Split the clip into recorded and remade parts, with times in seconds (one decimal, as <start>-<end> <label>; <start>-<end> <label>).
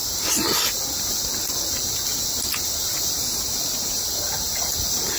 0.0-5.2 recorded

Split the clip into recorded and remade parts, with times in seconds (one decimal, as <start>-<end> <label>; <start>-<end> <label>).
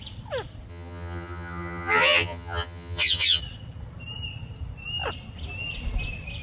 0.0-0.7 recorded; 0.7-3.4 remade; 3.4-6.4 recorded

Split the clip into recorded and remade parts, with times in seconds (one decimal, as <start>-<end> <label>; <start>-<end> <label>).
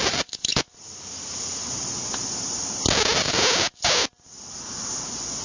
0.0-5.4 recorded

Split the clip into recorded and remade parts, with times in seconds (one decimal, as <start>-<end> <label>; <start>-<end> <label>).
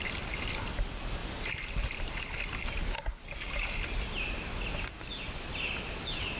0.0-6.4 recorded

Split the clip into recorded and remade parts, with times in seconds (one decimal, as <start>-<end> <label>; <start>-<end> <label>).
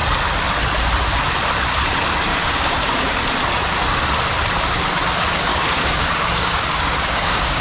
0.0-2.3 recorded; 2.3-3.2 remade; 3.2-5.5 recorded; 5.5-7.6 remade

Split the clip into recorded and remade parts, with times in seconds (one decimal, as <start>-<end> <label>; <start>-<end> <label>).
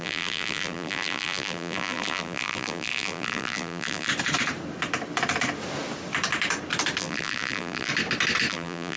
0.0-4.1 remade; 4.1-7.0 recorded; 7.0-7.9 remade; 7.9-8.5 recorded; 8.5-9.0 remade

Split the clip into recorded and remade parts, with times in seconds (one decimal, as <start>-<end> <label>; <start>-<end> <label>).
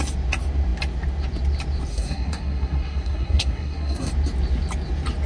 0.0-1.9 recorded; 1.9-4.1 remade; 4.1-5.3 recorded